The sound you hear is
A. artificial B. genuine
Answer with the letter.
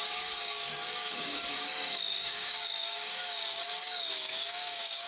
A